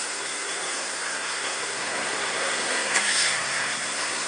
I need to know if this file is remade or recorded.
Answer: remade